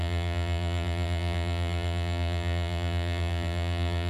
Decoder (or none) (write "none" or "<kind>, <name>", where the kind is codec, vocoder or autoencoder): vocoder, BigVGAN v2